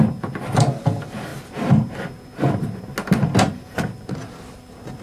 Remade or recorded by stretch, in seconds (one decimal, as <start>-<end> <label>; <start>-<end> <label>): 0.0-5.0 recorded